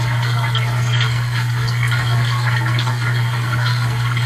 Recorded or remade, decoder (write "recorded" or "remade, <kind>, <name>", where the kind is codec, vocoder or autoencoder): remade, codec, SNAC